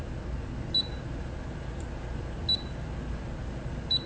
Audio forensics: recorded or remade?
recorded